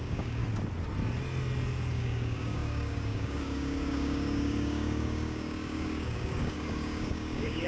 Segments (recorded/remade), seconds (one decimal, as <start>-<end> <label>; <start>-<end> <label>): 0.0-0.4 remade; 0.4-1.9 recorded; 1.9-7.7 remade